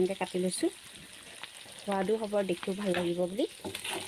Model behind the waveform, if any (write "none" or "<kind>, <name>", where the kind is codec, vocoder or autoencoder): none